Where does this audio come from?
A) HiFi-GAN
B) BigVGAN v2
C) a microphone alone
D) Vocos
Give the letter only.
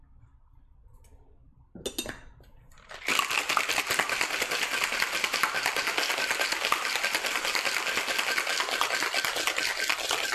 C